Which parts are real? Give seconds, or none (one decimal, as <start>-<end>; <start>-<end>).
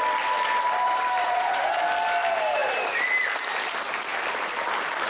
0.0-1.2; 1.7-5.1